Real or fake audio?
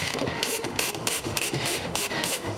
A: fake